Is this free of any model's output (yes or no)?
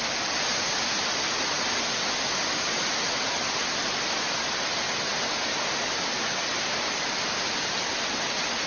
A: yes